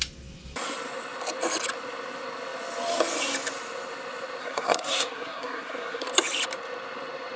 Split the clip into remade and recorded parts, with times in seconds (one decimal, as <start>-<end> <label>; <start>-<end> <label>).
0.0-4.4 recorded; 4.4-6.1 remade; 6.1-7.4 recorded

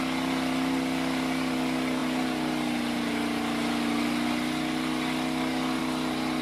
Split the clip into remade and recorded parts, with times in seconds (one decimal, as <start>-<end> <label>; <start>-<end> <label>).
0.0-6.4 recorded

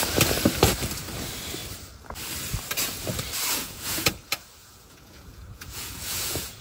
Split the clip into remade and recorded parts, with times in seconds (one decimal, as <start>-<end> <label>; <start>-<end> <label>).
0.0-3.5 recorded; 3.5-4.1 remade; 4.1-4.6 recorded; 4.6-6.6 remade